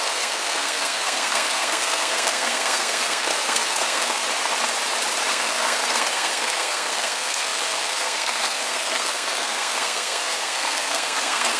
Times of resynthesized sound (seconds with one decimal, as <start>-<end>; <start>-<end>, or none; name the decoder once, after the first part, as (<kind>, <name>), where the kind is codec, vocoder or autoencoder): 0.0-4.2 (codec, SNAC); 5.3-11.6